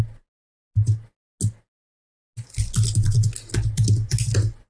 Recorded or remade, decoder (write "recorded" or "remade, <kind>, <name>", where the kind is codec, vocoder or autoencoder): recorded